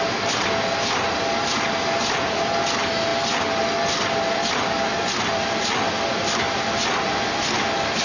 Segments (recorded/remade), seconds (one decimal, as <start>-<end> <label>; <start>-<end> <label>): 0.0-8.0 recorded